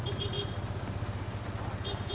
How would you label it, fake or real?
real